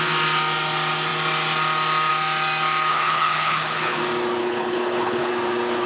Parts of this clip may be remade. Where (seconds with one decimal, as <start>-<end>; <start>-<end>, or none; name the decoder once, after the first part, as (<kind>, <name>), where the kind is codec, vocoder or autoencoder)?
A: 2.9-4.0 (codec, HILCodec); 4.4-5.3